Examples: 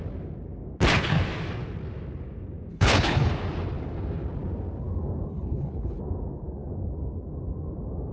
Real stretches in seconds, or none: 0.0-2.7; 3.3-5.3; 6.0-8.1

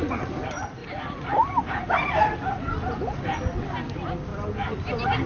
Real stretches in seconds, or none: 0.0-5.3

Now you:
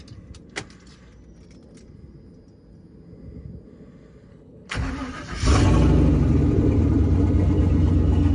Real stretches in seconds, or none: 0.0-4.3; 4.9-8.3

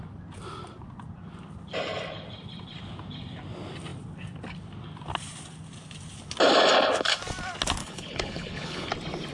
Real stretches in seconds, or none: 0.0-7.8; 8.9-9.3